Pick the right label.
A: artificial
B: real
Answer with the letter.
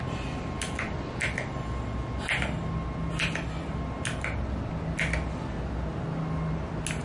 B